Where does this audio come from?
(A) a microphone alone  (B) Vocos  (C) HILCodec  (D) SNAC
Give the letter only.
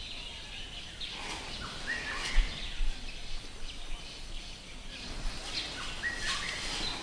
A